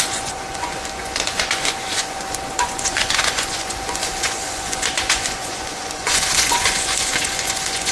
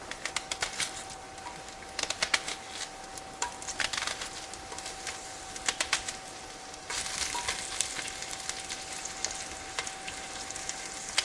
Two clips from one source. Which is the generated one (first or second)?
first